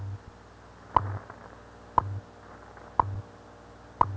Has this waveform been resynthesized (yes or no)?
no